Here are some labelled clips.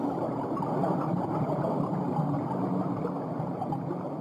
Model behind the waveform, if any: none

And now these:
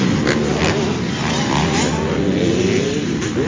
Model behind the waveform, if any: none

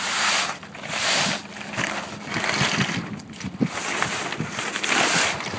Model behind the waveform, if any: none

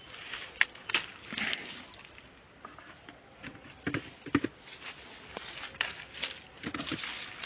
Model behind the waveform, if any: none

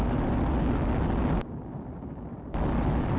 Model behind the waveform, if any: none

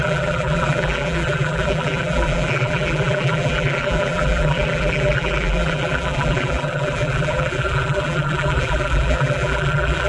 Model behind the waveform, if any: vocoder, BigVGAN v2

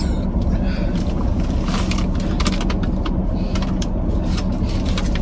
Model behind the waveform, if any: none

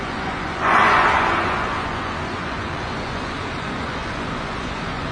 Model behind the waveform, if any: vocoder, Vocos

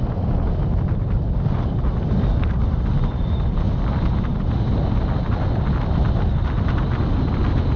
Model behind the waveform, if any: none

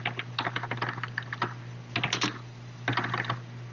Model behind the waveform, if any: none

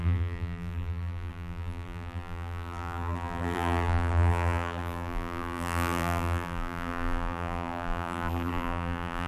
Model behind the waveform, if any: vocoder, BigVGAN v2